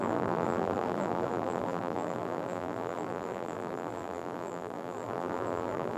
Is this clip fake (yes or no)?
yes